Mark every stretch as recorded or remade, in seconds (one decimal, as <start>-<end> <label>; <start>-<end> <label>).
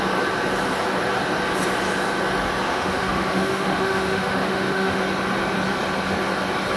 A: 0.0-2.7 recorded; 2.7-5.0 remade; 5.0-6.8 recorded